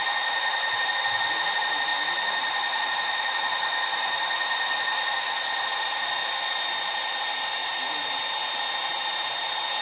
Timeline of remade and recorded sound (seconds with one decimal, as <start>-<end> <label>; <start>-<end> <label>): 0.0-9.8 recorded